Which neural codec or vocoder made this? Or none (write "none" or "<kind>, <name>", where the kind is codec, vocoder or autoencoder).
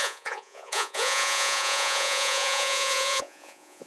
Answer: vocoder, Vocos